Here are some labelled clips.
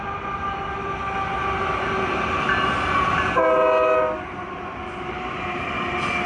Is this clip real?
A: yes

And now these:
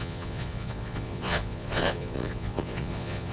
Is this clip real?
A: no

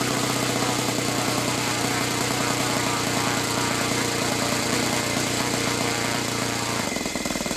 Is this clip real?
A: no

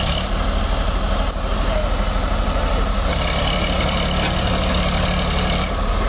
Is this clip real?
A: yes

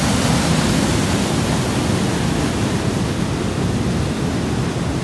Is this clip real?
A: yes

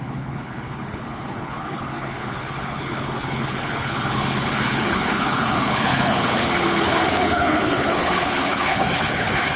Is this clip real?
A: no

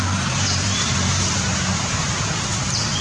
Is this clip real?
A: no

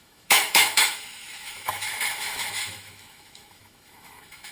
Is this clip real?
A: no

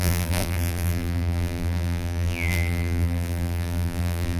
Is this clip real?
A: no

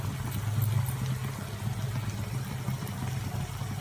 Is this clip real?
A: yes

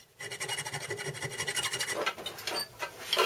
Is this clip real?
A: yes